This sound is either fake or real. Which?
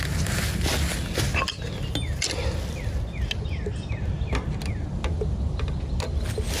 real